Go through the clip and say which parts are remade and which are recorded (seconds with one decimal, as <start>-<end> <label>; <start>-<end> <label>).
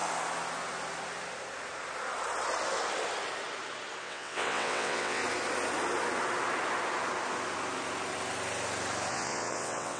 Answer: 0.0-4.0 recorded; 4.0-5.2 remade; 5.2-9.1 recorded; 9.1-10.0 remade